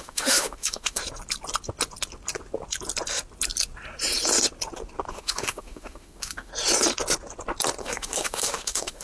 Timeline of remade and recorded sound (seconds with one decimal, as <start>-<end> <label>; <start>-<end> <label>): 0.0-1.0 remade; 1.0-5.1 recorded; 5.1-6.5 remade; 6.5-7.8 recorded; 7.8-9.0 remade